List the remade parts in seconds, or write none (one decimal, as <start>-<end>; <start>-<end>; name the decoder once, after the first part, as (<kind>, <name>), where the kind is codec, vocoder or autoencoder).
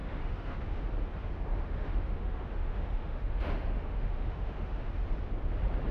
0.0-0.8 (autoencoder, DAC-VAE); 1.5-5.0